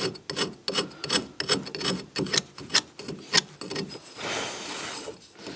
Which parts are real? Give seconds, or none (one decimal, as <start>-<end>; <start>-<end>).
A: 0.0-5.6